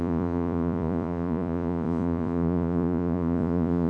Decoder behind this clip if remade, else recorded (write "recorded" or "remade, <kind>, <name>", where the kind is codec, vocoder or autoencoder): remade, vocoder, Vocos